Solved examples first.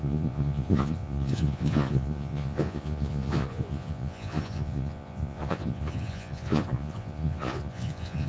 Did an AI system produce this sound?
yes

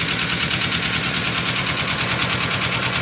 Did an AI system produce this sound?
yes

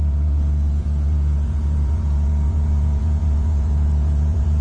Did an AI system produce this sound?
yes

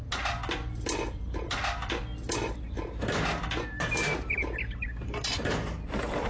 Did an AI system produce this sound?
no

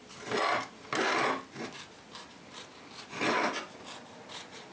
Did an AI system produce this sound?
no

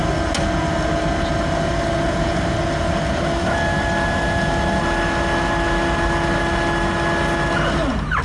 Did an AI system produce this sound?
no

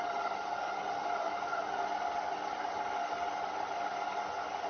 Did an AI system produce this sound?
no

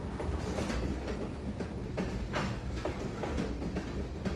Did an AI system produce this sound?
no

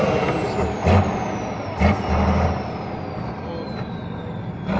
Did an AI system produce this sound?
no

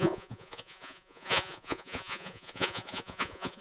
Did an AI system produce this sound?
yes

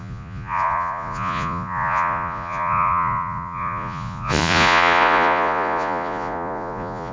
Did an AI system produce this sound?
yes